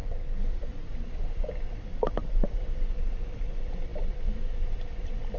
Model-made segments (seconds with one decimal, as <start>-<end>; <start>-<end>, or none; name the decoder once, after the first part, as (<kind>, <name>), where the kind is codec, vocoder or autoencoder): none